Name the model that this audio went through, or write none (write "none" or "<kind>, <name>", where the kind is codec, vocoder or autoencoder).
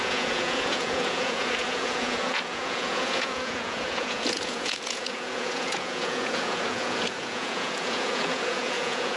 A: vocoder, Vocos